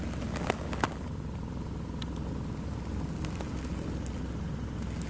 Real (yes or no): yes